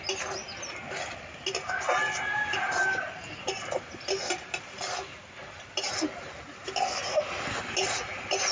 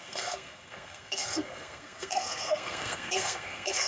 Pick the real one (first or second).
first